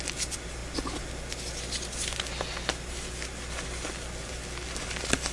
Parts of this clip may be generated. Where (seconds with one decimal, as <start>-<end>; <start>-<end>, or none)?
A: none